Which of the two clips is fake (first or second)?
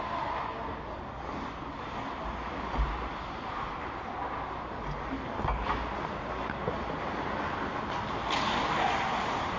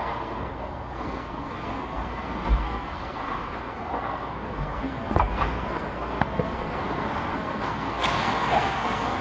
second